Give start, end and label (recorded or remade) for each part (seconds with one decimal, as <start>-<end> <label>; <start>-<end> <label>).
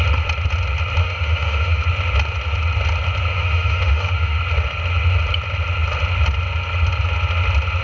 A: 0.0-1.0 recorded; 1.0-1.8 remade; 1.8-3.3 recorded; 3.3-4.4 remade; 4.4-7.8 recorded